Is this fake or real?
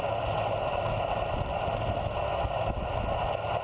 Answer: real